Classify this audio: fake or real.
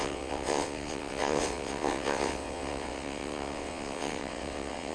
fake